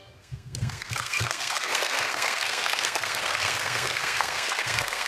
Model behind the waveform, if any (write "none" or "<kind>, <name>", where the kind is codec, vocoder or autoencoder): codec, SNAC